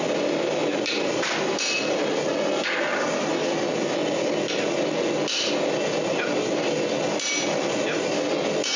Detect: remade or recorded recorded